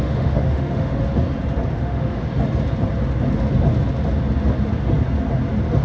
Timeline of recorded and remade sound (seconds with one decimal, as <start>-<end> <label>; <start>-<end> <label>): 0.0-1.0 remade; 1.0-1.7 recorded; 1.7-2.2 remade; 2.2-5.8 recorded